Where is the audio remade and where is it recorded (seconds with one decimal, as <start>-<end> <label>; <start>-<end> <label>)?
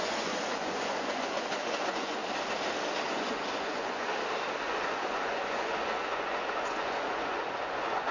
0.0-2.2 remade; 2.2-3.1 recorded; 3.1-4.1 remade; 4.1-4.6 recorded; 4.6-8.1 remade